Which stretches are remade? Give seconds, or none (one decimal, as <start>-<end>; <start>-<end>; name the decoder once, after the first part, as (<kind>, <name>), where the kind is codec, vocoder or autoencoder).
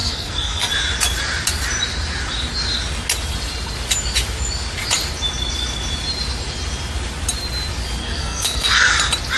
0.0-0.7 (codec, SNAC); 8.0-8.9